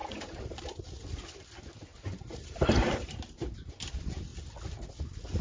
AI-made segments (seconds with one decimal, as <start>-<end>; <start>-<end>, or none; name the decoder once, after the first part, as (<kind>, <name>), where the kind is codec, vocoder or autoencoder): 0.0-0.6 (vocoder, BigVGAN v2); 1.9-3.7